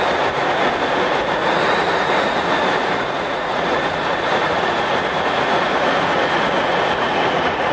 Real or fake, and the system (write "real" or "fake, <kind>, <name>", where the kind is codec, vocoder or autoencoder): fake, vocoder, Vocos